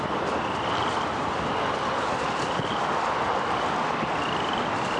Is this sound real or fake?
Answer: real